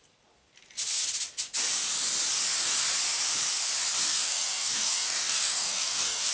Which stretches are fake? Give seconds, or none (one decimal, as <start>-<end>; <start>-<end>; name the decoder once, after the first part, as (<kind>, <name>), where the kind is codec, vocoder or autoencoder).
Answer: 4.0-6.3 (codec, DAC)